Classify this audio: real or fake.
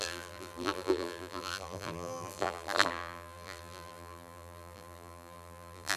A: fake